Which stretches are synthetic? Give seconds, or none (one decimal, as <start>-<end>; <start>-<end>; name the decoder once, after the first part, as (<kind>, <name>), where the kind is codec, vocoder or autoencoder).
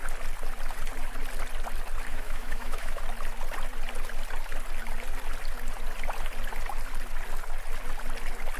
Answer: 2.1-3.0 (autoencoder, DAC-VAE)